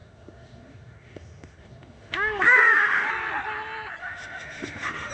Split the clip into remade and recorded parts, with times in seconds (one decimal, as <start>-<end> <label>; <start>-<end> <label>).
0.0-3.1 remade; 3.1-4.0 recorded; 4.0-5.1 remade